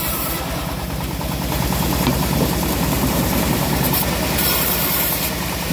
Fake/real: fake